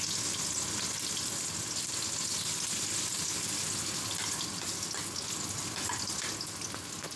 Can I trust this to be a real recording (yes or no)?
yes